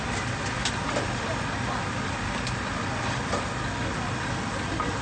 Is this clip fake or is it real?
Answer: real